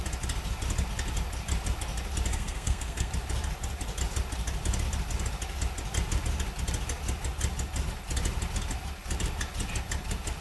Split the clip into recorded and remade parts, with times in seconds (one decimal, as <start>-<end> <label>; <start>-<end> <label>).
0.0-2.3 recorded; 2.3-3.1 remade; 3.1-10.4 recorded